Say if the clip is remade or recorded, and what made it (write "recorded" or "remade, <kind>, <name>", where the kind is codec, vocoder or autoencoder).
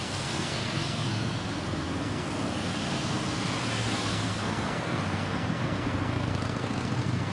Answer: remade, codec, SNAC